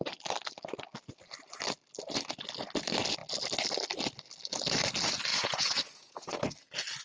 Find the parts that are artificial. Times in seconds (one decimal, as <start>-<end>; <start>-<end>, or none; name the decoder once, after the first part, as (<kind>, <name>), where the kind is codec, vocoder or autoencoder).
5.3-6.4 (vocoder, Vocos)